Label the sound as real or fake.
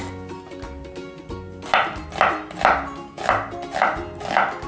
real